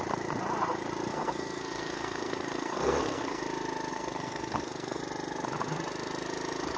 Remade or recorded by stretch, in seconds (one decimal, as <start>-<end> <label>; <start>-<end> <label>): 0.0-1.1 recorded; 1.1-3.4 remade; 3.4-3.9 recorded; 3.9-5.0 remade; 5.0-6.8 recorded